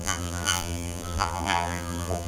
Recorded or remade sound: remade